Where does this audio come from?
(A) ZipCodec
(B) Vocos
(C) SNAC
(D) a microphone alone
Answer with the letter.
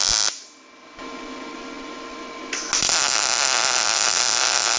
D